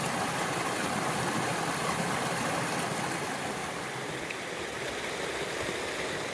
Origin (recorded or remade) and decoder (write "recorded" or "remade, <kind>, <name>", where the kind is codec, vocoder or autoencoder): recorded